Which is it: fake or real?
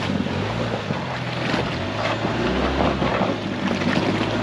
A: real